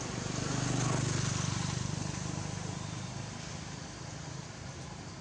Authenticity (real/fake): real